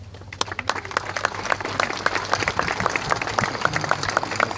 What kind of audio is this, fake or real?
real